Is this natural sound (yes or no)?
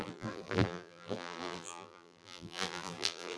no